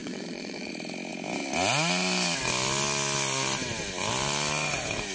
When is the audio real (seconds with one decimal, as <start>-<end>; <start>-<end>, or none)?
0.7-5.1

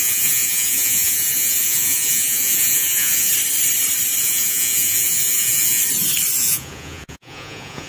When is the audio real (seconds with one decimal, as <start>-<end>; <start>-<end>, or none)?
3.3-4.2; 5.8-6.4

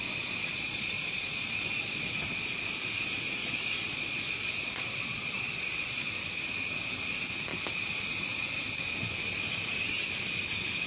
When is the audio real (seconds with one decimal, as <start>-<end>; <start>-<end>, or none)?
0.0-0.4; 2.1-3.4; 6.1-10.9

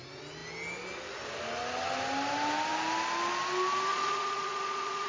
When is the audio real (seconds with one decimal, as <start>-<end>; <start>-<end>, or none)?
0.0-3.9

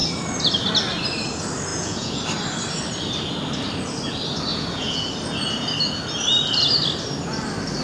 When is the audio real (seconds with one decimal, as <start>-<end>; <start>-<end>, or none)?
0.0-1.7; 2.2-4.5; 5.1-7.8

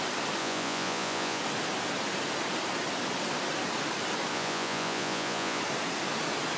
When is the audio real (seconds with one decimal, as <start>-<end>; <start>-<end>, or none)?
0.0-0.4; 1.4-4.3; 5.6-6.6

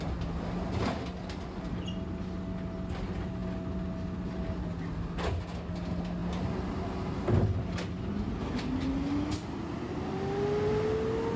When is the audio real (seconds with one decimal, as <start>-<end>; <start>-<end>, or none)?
0.0-11.4

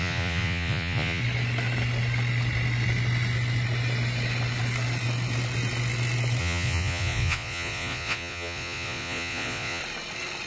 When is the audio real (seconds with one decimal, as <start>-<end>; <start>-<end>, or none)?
1.2-6.4; 9.8-10.5